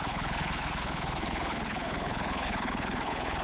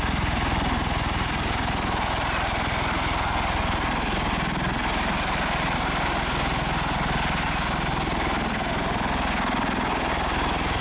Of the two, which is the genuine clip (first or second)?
second